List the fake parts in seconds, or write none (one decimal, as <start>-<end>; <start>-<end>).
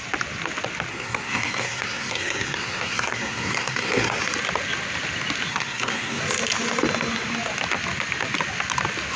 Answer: 0.9-4.2; 5.5-6.2